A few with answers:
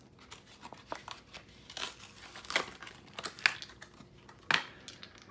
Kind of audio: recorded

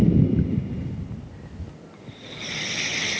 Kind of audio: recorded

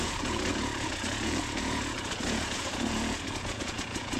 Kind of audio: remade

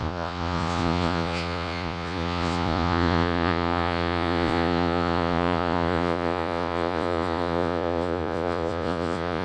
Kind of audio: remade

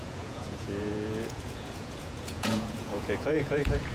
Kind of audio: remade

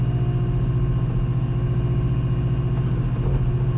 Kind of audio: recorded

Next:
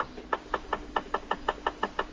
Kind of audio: recorded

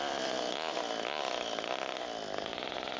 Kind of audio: recorded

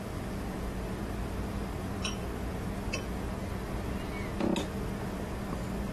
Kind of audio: recorded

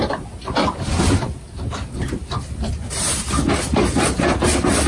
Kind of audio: recorded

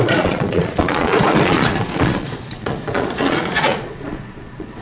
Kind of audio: remade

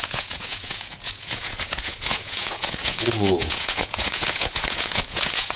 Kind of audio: remade